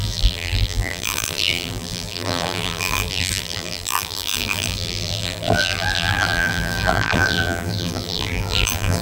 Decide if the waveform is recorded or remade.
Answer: remade